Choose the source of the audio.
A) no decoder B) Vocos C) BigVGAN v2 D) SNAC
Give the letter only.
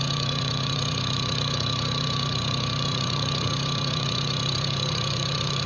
B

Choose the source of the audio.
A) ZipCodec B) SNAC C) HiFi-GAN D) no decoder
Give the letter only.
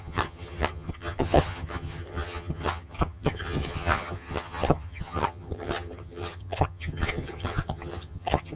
C